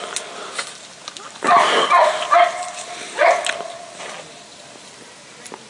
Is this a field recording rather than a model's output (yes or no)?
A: yes